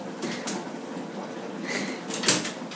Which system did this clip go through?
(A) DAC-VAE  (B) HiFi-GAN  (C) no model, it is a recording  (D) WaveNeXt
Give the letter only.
C